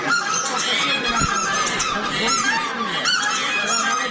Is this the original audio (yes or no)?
yes